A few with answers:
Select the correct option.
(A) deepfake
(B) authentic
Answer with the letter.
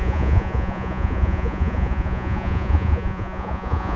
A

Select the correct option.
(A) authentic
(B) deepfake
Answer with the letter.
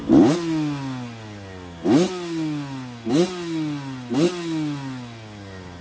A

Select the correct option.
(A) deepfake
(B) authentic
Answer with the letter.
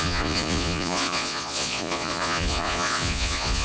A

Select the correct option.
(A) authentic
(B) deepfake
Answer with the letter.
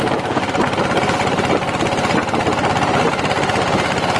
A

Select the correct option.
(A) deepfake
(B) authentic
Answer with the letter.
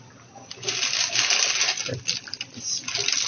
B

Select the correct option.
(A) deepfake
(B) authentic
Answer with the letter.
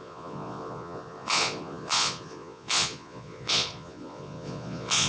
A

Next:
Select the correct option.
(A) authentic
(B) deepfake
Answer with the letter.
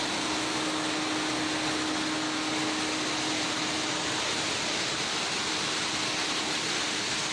A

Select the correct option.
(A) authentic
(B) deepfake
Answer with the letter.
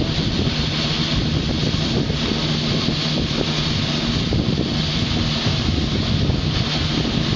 A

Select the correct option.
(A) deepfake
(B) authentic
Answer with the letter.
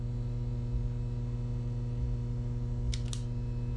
B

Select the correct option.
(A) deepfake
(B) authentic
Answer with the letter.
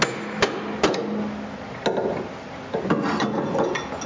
B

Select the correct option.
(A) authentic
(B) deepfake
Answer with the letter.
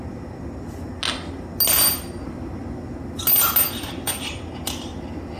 A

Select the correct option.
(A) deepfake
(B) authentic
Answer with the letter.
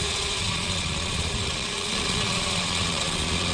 A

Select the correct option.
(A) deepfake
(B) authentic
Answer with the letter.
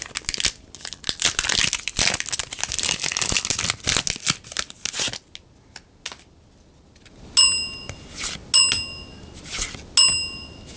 B